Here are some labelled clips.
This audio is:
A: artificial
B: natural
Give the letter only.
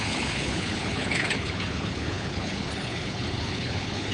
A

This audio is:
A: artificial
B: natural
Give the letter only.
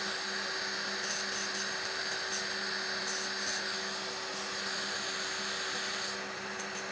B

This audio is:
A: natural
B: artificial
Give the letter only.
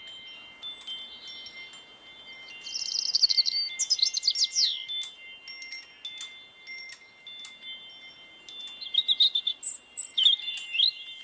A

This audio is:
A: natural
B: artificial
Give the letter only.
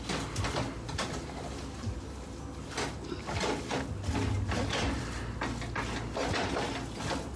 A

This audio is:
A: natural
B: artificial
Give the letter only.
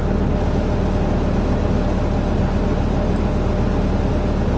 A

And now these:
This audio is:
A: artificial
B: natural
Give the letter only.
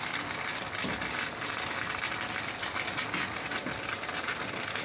B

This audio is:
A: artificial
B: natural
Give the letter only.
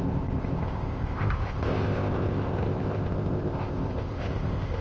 A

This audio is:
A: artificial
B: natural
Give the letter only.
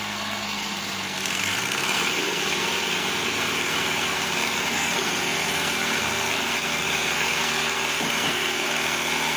A